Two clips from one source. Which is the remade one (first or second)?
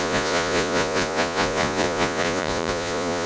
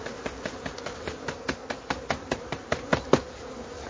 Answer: first